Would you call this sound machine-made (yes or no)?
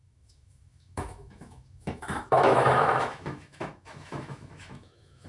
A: yes